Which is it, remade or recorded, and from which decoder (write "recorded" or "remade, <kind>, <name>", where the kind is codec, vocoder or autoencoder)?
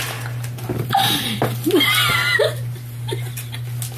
recorded